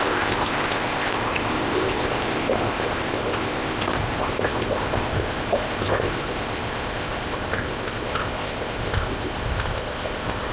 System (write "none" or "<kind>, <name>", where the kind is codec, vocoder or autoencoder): codec, ZipCodec